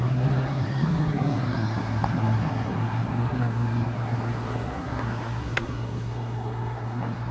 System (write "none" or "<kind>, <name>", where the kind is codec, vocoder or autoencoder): codec, SNAC